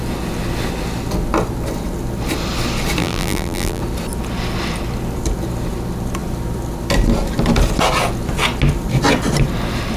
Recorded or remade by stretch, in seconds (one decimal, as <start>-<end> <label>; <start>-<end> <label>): 0.0-3.0 recorded; 3.0-3.8 remade; 3.8-10.0 recorded